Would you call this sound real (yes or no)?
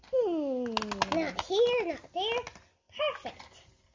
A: yes